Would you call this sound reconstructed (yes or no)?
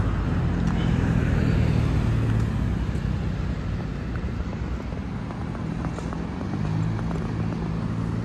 no